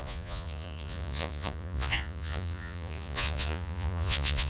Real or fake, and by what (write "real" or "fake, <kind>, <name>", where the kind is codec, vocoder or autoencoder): fake, vocoder, Vocos